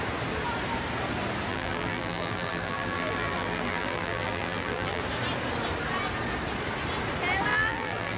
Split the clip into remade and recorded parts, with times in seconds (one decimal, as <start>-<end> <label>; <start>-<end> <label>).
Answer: 0.0-1.5 recorded; 1.5-5.0 remade; 5.0-7.5 recorded; 7.5-8.2 remade